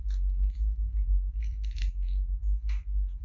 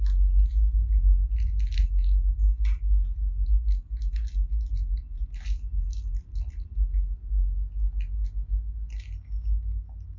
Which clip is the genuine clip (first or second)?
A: second